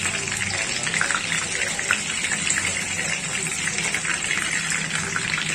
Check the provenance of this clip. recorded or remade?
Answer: recorded